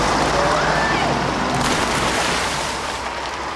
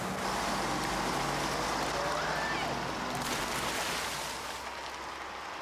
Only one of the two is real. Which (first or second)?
second